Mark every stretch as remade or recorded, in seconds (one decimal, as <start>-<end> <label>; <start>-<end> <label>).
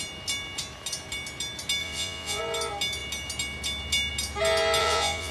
0.0-1.8 recorded; 1.8-2.4 remade; 2.4-4.8 recorded; 4.8-5.3 remade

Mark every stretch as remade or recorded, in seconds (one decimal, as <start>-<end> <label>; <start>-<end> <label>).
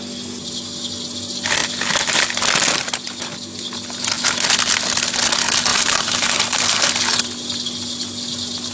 0.0-5.7 recorded; 5.7-6.6 remade; 6.6-8.7 recorded